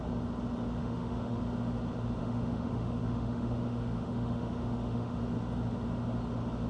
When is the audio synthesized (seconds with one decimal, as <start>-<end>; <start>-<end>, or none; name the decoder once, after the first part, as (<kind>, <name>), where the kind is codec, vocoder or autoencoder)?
0.8-1.4 (autoencoder, DAC-VAE); 2.2-5.2